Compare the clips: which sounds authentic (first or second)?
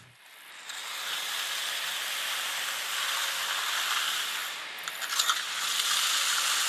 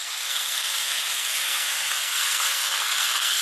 first